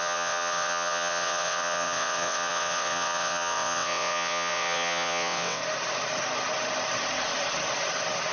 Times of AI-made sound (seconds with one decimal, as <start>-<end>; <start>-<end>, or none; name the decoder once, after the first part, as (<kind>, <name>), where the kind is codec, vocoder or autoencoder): 0.0-5.6 (vocoder, WaveNeXt)